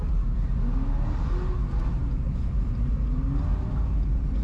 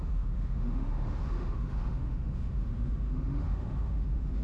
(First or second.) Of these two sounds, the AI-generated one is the second